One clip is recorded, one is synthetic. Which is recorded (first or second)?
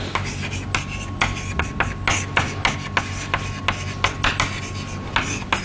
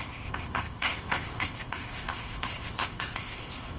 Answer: first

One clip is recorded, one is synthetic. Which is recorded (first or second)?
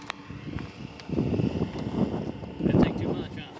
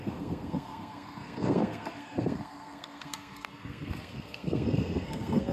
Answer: first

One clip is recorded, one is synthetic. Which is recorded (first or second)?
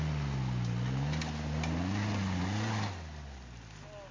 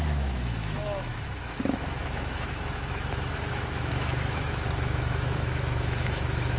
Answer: first